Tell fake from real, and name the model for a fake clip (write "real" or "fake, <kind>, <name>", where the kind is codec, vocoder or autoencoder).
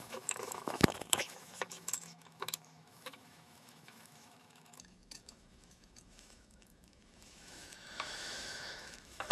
fake, autoencoder, DAC-VAE